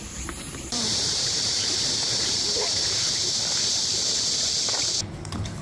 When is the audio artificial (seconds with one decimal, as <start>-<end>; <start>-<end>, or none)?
0.0-3.4

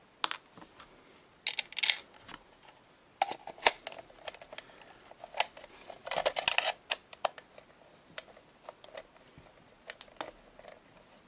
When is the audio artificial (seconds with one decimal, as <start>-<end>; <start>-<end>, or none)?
none

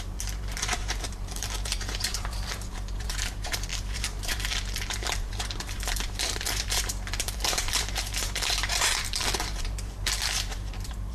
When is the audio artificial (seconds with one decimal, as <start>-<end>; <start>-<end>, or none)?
0.0-11.1

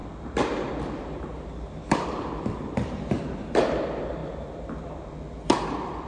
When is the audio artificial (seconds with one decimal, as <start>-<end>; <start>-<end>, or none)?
0.0-3.7; 4.2-5.1

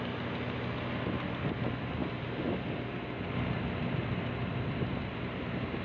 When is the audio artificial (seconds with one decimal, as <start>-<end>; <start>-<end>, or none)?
none

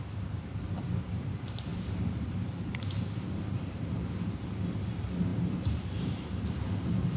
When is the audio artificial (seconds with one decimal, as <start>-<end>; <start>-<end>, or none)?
0.0-7.2

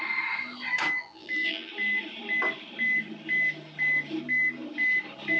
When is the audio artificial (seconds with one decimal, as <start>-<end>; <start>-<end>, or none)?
1.0-1.7

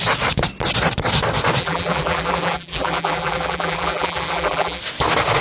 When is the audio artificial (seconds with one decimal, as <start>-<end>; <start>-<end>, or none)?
1.6-4.8